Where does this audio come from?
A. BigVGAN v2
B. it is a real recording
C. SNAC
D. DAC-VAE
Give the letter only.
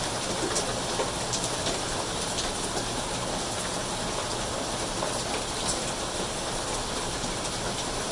B